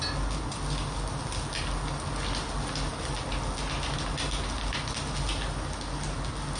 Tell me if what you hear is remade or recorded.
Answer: recorded